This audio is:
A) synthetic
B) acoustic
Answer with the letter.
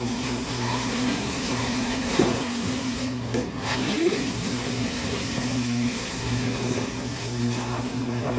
A